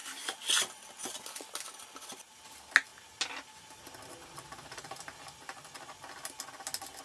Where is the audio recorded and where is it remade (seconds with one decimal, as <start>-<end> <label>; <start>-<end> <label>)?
0.0-7.0 recorded